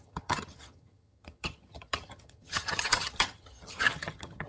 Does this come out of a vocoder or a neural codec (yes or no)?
yes